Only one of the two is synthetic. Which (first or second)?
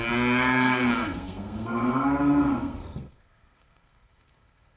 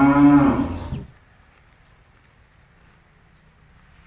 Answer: first